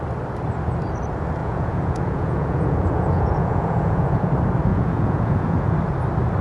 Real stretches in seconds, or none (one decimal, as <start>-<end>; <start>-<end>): 0.0-1.4; 4.3-4.7; 5.7-6.4